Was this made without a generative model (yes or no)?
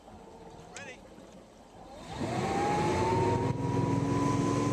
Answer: yes